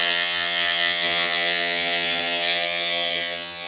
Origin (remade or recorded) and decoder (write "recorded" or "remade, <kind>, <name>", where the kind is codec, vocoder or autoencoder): remade, vocoder, HiFi-GAN